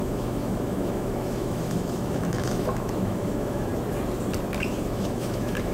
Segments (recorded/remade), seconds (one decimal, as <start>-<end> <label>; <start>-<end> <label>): 0.0-3.7 remade; 3.7-4.7 recorded; 4.7-5.7 remade